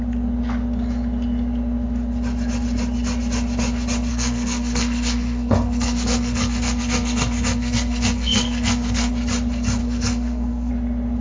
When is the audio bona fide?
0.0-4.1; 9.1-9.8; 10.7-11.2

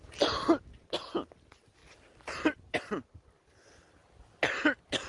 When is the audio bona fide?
0.0-5.1

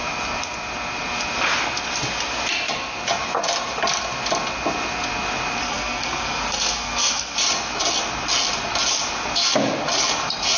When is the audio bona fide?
0.0-5.6; 7.4-10.6

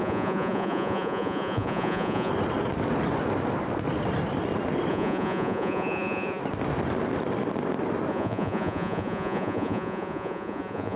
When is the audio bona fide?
2.3-4.9; 6.4-8.1

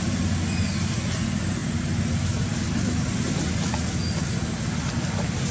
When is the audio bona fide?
0.0-5.5

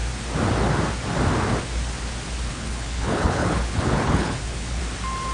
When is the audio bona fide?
0.0-2.5; 4.8-5.3